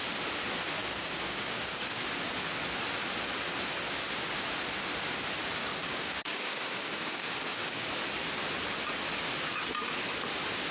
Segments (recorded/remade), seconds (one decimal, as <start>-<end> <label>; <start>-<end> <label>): 0.0-0.8 recorded; 0.8-2.0 remade; 2.0-5.7 recorded; 5.7-7.9 remade; 7.9-10.7 recorded